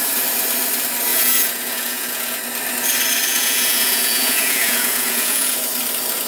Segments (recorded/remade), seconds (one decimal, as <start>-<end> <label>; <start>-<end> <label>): 0.0-1.1 recorded; 1.1-2.4 remade; 2.4-3.3 recorded; 3.3-5.6 remade; 5.6-6.3 recorded